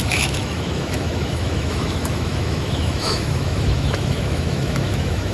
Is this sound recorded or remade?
remade